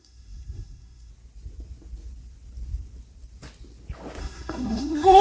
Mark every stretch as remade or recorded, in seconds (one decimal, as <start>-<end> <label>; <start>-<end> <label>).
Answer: 0.0-1.1 remade; 1.1-4.2 recorded; 4.2-5.2 remade